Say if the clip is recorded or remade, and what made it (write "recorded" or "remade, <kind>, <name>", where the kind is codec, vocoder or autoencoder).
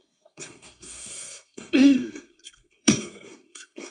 remade, codec, SNAC